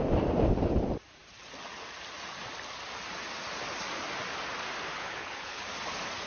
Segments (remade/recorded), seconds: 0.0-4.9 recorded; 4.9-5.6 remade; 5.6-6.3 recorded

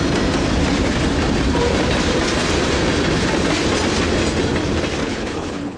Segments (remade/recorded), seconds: 0.0-5.0 recorded; 5.0-5.8 remade

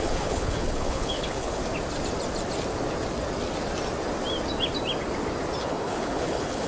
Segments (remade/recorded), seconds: 0.0-1.6 remade; 1.6-5.6 recorded; 5.6-6.7 remade

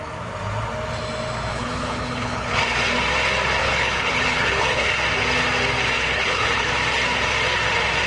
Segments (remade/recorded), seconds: 0.0-1.5 recorded; 1.5-2.6 remade; 2.6-3.6 recorded; 3.6-4.9 remade; 4.9-6.1 recorded; 6.1-6.7 remade; 6.7-8.1 recorded

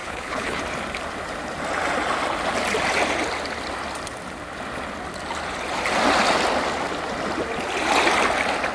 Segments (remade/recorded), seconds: 0.0-0.6 remade; 0.6-8.7 recorded

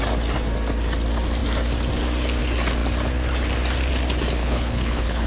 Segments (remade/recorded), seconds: 0.0-4.4 recorded; 4.4-5.3 remade

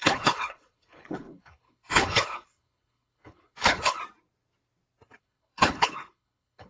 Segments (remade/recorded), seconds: 0.0-4.0 remade; 4.0-5.2 recorded; 5.2-6.7 remade

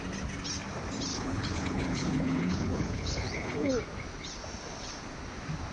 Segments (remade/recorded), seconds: 0.0-1.1 recorded; 1.1-3.7 remade; 3.7-5.7 recorded